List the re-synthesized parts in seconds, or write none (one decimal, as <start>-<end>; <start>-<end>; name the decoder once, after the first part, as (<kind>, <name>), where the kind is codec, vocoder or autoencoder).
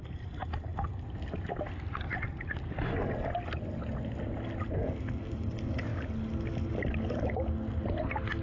none